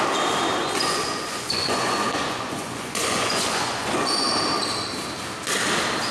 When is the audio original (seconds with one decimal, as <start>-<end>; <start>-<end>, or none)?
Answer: 0.0-0.6; 4.3-6.1